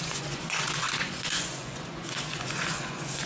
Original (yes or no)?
no